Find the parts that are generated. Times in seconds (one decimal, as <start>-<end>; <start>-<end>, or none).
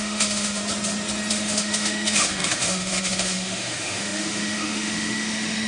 0.0-0.6; 1.3-5.7